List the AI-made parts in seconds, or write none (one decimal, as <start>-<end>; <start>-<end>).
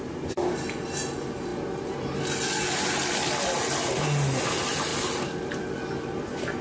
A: none